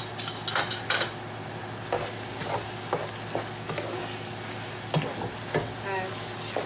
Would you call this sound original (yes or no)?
yes